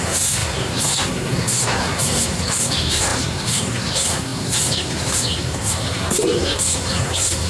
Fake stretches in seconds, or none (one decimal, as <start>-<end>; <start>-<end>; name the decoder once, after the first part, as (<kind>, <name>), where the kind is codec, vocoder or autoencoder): 0.0-7.5 (codec, SNAC)